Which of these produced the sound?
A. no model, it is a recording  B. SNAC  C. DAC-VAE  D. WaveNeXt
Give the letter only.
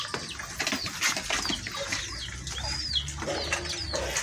A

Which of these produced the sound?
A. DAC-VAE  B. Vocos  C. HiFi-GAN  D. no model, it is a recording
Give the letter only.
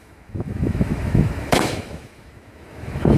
A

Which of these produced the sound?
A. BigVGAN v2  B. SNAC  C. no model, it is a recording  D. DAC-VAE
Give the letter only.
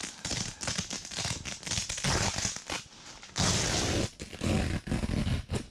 C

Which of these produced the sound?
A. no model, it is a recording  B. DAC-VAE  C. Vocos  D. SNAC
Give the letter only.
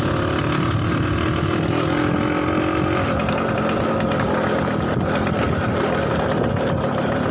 A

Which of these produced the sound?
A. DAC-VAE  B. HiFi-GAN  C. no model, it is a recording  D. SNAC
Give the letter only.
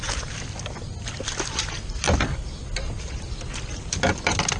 C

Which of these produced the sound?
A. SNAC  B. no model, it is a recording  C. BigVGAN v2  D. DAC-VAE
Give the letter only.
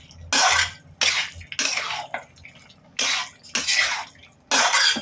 B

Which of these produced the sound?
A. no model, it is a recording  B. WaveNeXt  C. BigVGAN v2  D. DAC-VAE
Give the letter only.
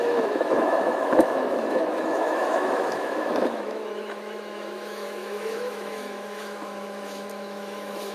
D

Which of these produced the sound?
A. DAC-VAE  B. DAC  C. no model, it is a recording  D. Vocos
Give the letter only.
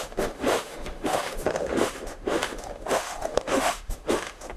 A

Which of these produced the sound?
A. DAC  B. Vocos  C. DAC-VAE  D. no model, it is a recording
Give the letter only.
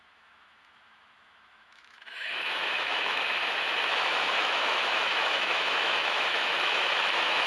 C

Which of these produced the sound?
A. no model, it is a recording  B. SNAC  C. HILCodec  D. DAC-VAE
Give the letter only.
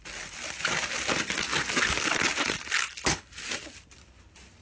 A